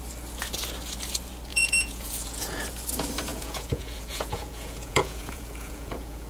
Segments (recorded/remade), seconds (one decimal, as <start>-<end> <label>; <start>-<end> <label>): 0.0-1.5 recorded; 1.5-2.6 remade; 2.6-3.3 recorded; 3.3-6.3 remade